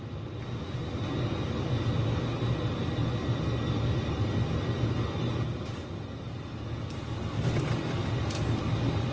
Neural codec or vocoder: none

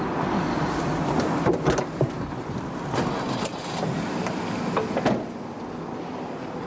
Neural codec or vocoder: none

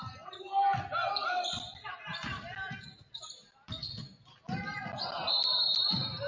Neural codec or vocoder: none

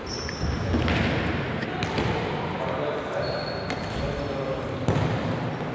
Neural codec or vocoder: none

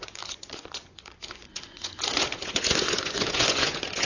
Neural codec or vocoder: vocoder, Vocos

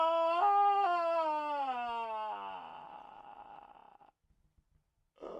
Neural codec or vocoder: none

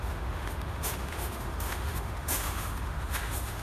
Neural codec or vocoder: autoencoder, DAC-VAE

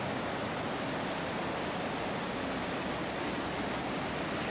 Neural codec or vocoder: none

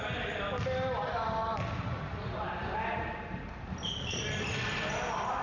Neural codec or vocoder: none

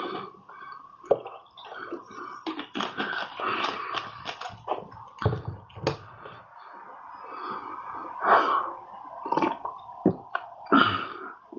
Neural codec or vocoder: none